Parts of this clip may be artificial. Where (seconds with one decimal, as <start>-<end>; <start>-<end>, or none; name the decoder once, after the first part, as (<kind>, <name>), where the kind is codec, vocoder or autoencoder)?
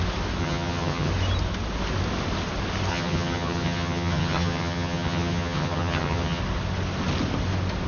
0.4-1.1 (vocoder, HiFi-GAN); 2.9-6.4